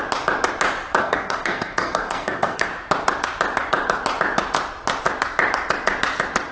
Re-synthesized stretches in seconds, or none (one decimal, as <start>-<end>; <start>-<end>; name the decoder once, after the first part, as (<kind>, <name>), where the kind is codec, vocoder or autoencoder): 1.0-2.7 (codec, SNAC)